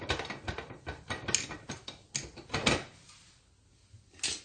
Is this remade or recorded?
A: recorded